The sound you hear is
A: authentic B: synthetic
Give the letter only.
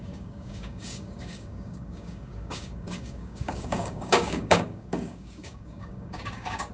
B